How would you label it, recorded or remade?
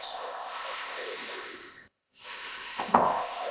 remade